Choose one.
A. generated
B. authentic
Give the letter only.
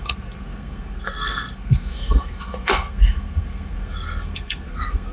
A